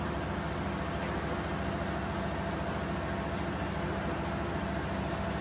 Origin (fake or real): real